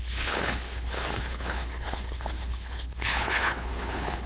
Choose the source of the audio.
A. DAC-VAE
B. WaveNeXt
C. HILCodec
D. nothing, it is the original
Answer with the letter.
C